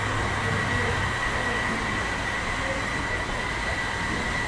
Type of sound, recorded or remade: recorded